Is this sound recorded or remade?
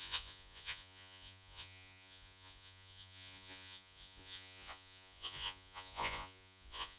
remade